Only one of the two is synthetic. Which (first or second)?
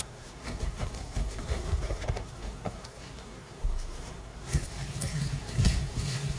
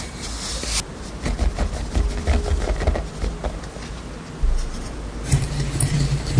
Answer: first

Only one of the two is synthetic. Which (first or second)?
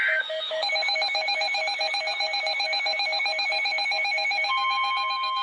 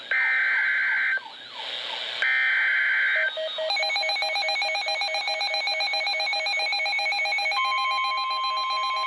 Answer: first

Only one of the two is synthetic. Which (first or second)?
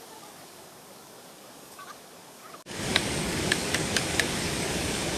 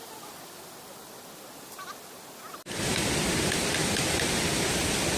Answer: first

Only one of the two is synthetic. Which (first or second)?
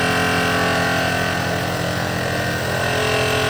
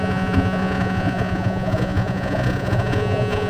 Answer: second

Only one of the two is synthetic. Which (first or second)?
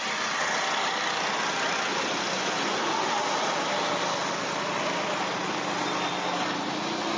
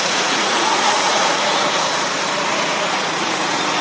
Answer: second